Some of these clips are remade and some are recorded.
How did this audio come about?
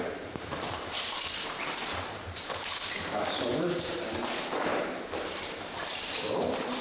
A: remade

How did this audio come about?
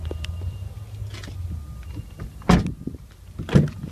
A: recorded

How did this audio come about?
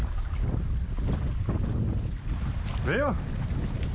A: recorded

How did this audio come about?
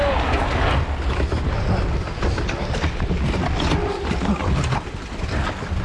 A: recorded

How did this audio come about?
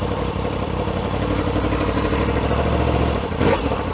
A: remade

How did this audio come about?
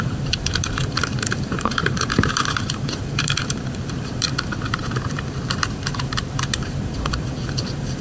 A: remade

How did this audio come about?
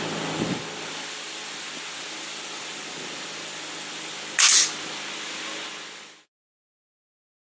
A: recorded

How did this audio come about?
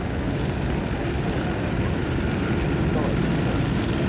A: recorded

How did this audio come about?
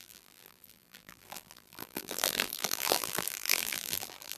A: remade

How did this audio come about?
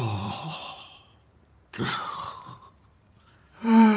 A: remade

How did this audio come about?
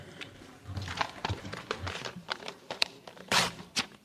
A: remade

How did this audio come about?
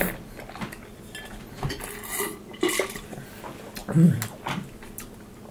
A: recorded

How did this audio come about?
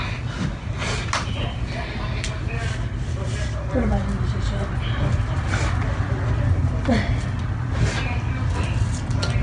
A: recorded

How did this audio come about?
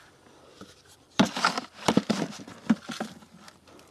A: remade